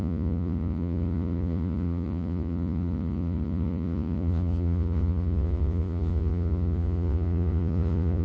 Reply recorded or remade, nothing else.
remade